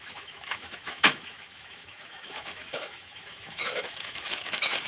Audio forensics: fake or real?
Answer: fake